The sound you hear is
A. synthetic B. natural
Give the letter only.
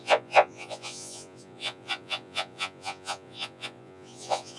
A